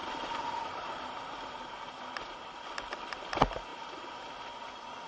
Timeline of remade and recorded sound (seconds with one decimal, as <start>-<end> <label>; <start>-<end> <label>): 0.0-5.1 recorded